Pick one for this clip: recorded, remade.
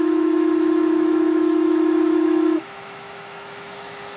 remade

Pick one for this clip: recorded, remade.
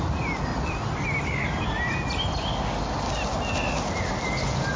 recorded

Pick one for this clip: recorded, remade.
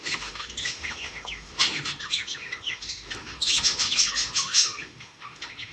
remade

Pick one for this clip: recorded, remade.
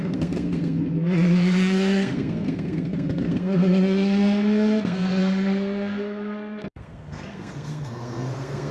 remade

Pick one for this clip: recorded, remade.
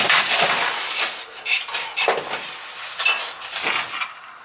recorded